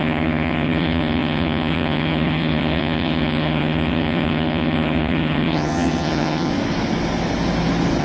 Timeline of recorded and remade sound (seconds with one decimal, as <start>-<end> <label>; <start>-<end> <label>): 0.0-6.5 remade; 6.5-8.0 recorded